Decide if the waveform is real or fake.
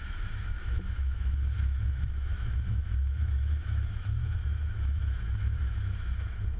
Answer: fake